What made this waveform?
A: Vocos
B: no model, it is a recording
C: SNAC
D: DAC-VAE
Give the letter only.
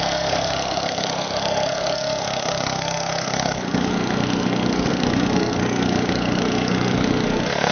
C